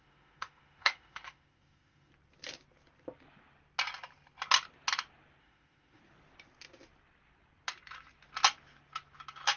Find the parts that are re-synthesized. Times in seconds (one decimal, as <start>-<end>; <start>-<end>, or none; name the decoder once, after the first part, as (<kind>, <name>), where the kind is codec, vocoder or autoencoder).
0.0-2.1 (autoencoder, DAC-VAE); 5.4-6.0